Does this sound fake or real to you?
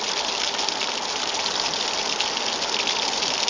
real